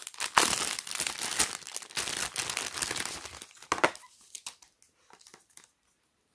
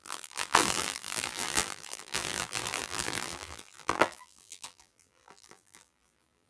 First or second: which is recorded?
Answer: first